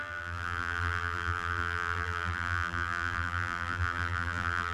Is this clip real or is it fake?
fake